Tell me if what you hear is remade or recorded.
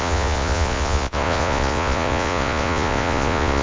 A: remade